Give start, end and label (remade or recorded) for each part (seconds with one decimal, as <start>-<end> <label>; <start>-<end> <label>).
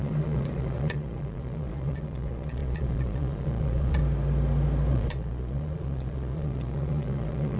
0.0-4.0 remade; 4.0-4.9 recorded; 4.9-7.6 remade